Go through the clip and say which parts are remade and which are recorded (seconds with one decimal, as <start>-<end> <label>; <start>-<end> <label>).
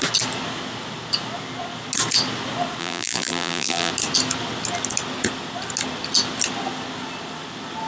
0.0-2.8 recorded; 2.8-3.9 remade; 3.9-7.9 recorded